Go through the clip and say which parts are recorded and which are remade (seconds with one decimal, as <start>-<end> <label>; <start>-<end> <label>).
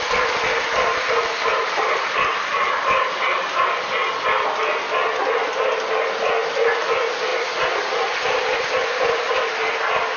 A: 0.0-10.2 recorded